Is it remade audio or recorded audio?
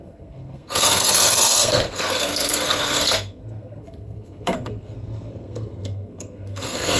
remade